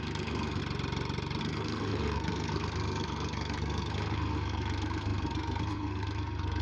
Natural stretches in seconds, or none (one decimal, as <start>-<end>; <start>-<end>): 0.6-1.4